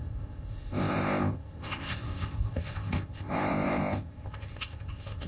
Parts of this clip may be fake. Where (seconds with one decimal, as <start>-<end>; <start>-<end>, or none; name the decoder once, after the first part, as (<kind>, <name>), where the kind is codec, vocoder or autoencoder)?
0.0-5.3 (codec, ZipCodec)